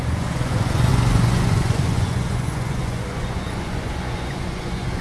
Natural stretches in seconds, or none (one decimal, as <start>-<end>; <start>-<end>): none